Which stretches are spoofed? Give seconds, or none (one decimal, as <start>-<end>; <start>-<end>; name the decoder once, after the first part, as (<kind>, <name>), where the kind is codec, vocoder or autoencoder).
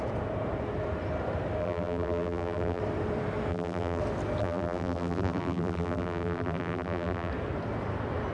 1.6-2.8 (vocoder, BigVGAN v2); 3.5-4.0; 4.4-7.3